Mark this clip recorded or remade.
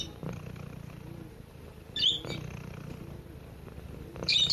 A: recorded